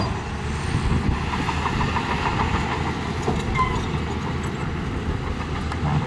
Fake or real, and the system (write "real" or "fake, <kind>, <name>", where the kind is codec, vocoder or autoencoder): real